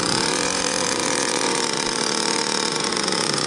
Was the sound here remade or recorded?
remade